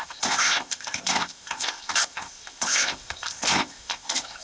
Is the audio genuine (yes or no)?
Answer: no